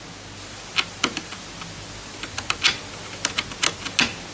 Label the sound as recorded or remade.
recorded